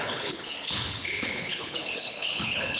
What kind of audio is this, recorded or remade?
remade